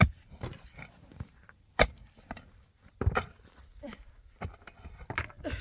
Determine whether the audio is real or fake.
fake